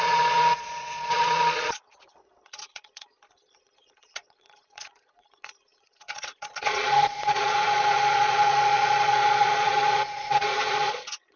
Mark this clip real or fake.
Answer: fake